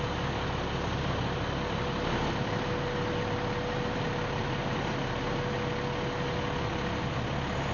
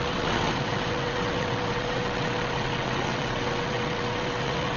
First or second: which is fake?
second